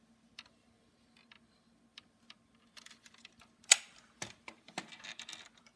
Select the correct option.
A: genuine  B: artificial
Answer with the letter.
A